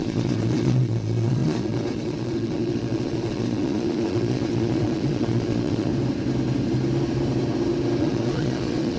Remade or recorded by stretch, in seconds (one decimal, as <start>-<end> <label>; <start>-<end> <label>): 0.0-5.9 remade; 5.9-8.0 recorded; 8.0-9.0 remade